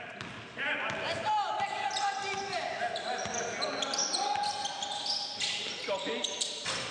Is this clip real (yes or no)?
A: yes